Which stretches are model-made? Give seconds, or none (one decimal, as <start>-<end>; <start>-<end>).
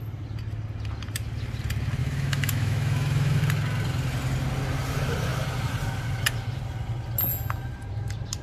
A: 2.0-3.4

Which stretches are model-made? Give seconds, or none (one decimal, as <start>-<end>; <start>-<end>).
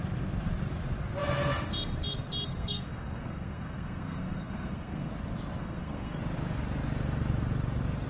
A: 2.5-5.1; 5.6-6.2